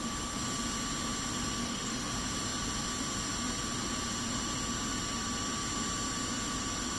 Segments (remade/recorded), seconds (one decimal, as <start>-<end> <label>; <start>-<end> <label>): 0.0-1.6 recorded; 1.6-2.1 remade; 2.1-7.0 recorded